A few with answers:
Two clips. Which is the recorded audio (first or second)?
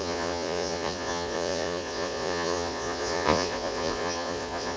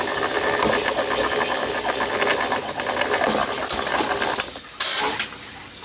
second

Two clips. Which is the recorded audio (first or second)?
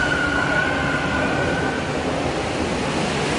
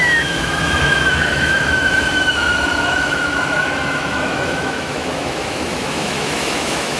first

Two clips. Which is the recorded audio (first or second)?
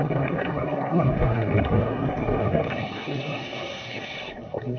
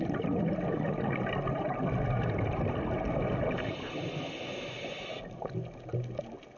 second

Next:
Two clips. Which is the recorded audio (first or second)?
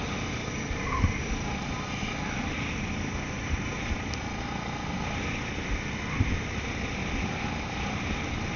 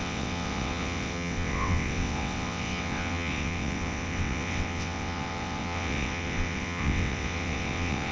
first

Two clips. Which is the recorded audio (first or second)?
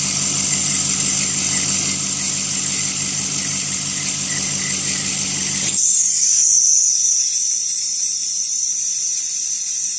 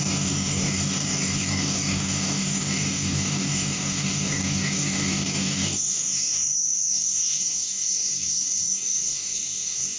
first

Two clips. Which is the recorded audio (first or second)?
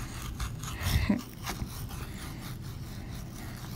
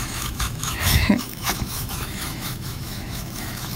first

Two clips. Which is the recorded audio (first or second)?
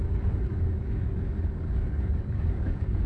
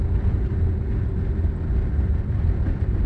second